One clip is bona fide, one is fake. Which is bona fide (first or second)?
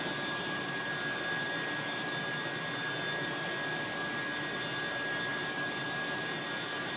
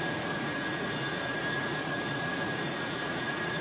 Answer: first